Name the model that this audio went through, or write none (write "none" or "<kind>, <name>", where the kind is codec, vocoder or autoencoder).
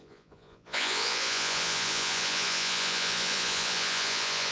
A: vocoder, Vocos